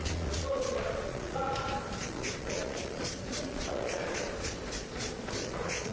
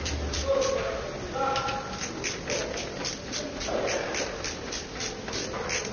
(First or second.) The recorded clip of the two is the second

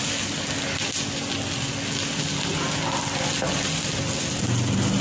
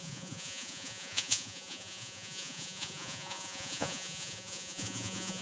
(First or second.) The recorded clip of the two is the first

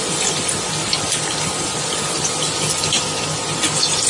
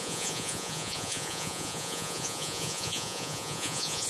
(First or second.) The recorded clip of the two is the first